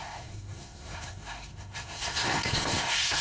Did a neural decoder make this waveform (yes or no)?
yes